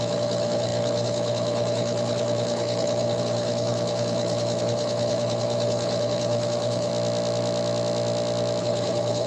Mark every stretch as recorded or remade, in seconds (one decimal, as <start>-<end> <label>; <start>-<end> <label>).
0.0-6.9 remade; 6.9-8.6 recorded; 8.6-9.3 remade